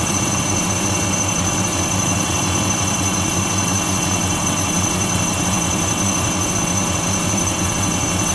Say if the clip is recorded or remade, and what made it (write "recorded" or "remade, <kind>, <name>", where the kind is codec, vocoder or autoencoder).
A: remade, vocoder, WaveNeXt